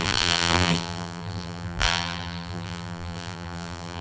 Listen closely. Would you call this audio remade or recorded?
remade